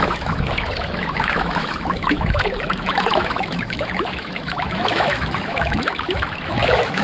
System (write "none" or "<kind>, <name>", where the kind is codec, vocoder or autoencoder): autoencoder, DAC-VAE